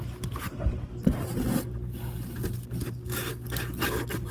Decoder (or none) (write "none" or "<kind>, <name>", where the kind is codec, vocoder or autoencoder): none